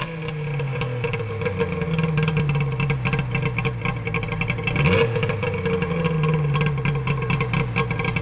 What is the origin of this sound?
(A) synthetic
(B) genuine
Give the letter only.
B